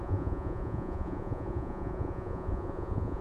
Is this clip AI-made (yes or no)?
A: yes